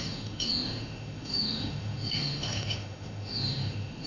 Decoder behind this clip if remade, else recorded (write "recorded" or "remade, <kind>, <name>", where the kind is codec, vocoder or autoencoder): remade, autoencoder, DAC-VAE